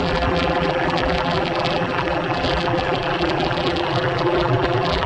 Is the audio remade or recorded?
remade